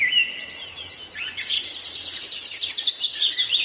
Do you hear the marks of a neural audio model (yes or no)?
no